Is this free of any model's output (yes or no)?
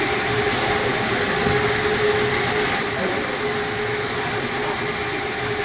yes